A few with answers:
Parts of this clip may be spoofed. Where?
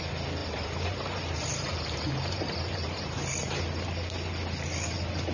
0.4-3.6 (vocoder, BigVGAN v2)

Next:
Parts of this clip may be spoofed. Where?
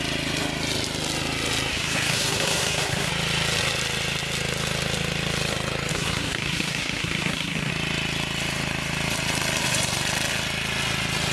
1.7-3.1 (codec, SNAC); 5.9-7.7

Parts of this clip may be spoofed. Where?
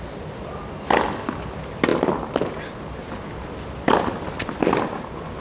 none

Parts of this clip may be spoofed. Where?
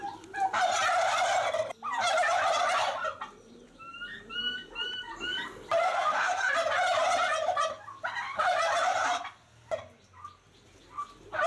5.8-6.4 (codec, SNAC)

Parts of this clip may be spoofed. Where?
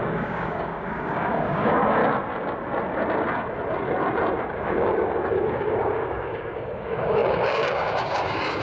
0.0-2.0 (codec, DAC); 4.4-8.6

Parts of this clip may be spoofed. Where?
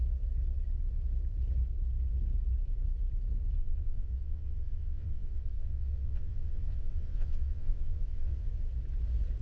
3.6-8.6 (vocoder, WaveNeXt)